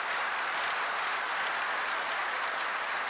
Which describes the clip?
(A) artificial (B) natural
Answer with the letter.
B